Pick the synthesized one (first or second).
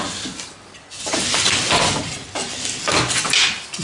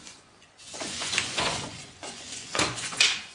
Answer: second